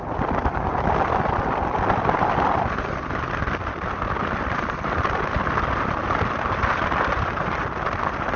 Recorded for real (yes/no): yes